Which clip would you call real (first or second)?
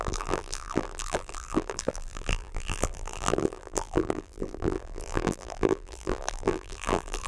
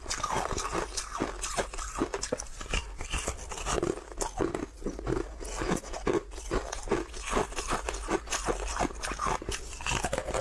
second